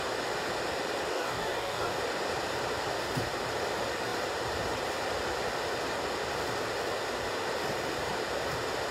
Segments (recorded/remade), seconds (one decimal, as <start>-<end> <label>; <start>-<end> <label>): 0.0-1.1 recorded; 1.1-2.0 remade; 2.0-8.9 recorded